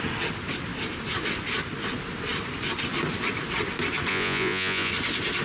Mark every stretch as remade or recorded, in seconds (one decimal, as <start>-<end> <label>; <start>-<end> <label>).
0.0-4.1 recorded; 4.1-4.9 remade; 4.9-5.4 recorded